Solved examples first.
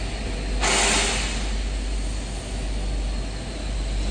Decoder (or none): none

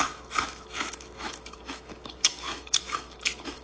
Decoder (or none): autoencoder, DAC-VAE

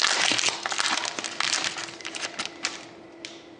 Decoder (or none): none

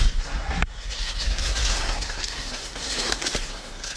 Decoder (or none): codec, SNAC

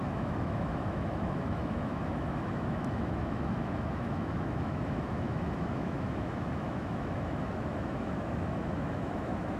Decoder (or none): autoencoder, DAC-VAE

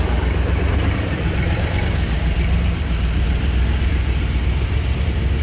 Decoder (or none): vocoder, BigVGAN v2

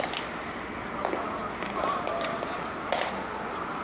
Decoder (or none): none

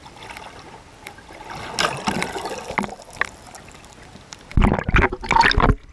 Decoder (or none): none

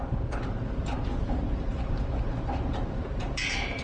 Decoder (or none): vocoder, BigVGAN v2